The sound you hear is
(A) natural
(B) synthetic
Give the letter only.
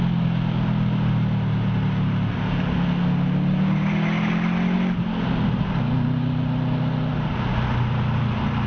A